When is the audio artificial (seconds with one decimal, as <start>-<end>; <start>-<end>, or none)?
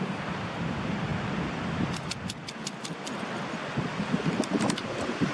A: 0.0-1.1; 4.3-5.3